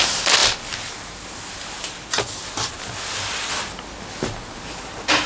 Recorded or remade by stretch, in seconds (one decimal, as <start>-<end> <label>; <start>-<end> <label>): 0.0-5.3 recorded